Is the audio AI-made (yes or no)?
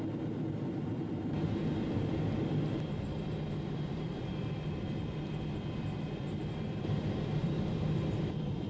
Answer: yes